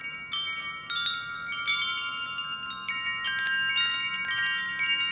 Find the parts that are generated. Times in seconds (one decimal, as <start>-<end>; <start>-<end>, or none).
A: none